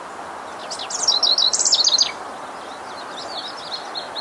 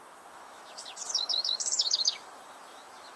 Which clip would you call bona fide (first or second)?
first